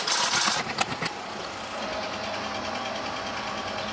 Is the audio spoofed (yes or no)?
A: no